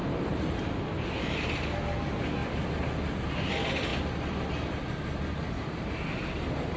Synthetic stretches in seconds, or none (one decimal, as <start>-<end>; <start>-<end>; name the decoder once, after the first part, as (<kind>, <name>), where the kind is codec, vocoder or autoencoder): none